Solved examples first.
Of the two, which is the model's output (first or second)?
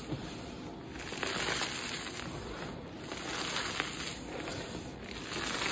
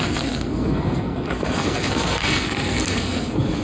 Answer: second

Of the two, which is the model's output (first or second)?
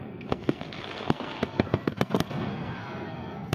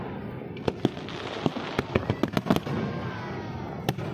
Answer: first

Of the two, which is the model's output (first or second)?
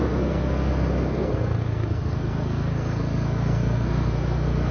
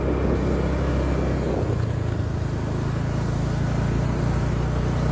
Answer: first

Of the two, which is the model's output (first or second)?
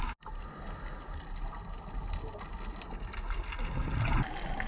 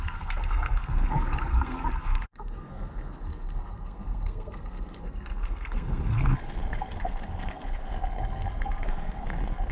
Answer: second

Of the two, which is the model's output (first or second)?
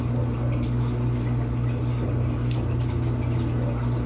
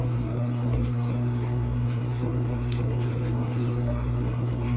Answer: second